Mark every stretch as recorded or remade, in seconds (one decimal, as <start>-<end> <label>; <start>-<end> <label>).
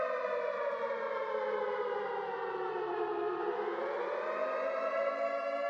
0.0-5.7 recorded